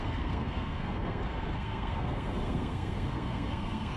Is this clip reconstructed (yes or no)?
yes